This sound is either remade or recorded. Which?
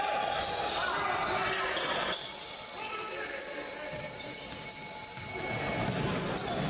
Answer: recorded